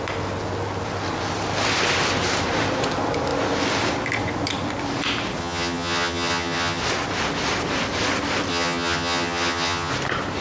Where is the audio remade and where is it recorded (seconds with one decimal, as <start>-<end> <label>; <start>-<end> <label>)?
0.0-5.4 recorded; 5.4-6.8 remade; 6.8-8.5 recorded; 8.5-9.9 remade; 9.9-10.4 recorded